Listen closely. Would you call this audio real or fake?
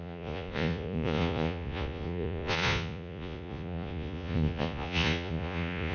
fake